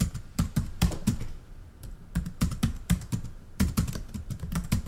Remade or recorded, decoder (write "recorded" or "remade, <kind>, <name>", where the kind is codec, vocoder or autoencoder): remade, vocoder, BigVGAN v2